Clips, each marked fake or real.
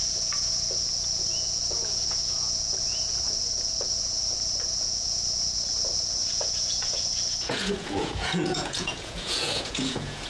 fake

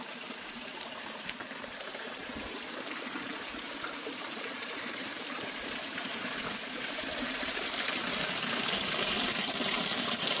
fake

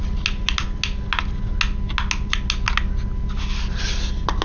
real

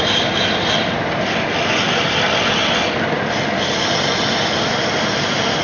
fake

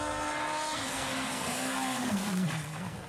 fake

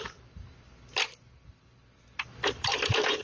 real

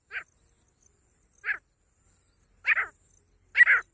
real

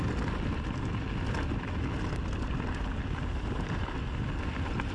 real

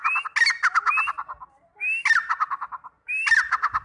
real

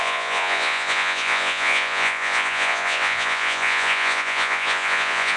fake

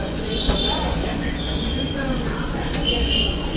fake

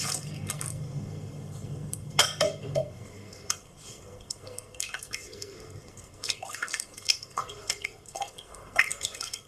fake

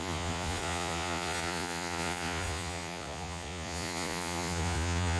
fake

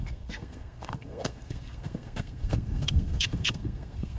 fake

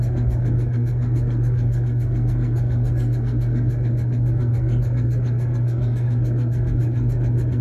fake